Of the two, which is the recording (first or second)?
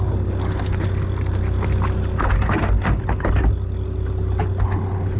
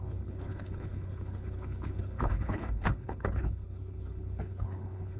first